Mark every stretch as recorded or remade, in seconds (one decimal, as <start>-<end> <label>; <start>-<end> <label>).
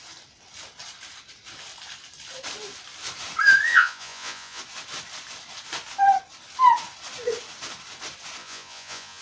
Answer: 0.0-3.7 recorded; 3.7-4.6 remade; 4.6-8.4 recorded; 8.4-9.2 remade